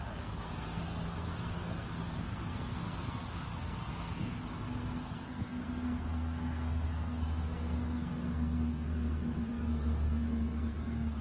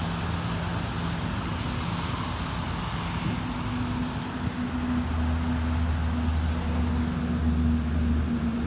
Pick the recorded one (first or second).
second